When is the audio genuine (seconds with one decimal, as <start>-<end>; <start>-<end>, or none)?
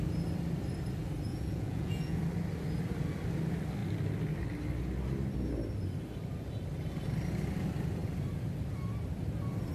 0.0-1.3; 2.2-9.7